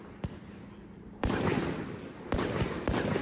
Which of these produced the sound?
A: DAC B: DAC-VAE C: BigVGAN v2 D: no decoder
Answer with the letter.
D